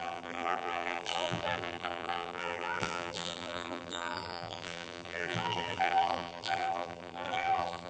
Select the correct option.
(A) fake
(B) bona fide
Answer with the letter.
A